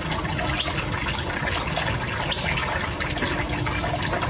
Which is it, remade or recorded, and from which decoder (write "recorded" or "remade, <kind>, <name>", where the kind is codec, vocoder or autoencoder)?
recorded